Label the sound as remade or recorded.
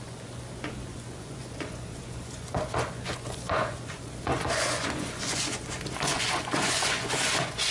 remade